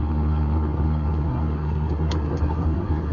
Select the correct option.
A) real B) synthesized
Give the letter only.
B